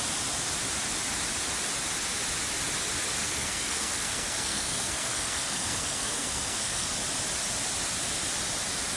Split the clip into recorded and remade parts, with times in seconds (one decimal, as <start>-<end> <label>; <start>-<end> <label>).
0.0-3.2 recorded; 3.2-6.9 remade; 6.9-9.0 recorded